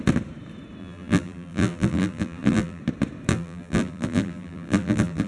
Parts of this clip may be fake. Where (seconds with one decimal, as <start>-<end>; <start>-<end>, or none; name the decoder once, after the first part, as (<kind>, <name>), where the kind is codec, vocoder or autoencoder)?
0.8-2.8 (vocoder, BigVGAN v2); 3.3-5.3